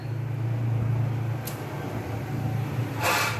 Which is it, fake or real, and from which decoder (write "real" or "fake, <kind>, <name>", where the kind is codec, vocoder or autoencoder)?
real